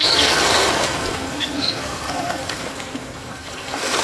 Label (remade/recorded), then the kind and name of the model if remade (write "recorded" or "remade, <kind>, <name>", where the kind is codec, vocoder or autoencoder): remade, codec, SNAC